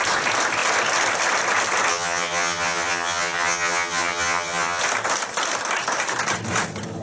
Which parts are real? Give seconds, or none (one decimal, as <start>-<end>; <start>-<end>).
0.0-1.9; 4.8-7.0